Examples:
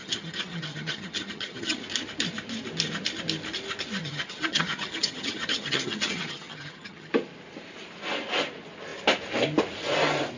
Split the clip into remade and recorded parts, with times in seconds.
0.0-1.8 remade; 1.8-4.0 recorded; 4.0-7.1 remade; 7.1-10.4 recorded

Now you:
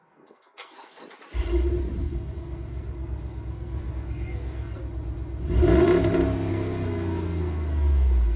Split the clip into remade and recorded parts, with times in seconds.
0.0-1.0 remade; 1.0-2.0 recorded; 2.0-4.8 remade; 4.8-6.5 recorded; 6.5-8.4 remade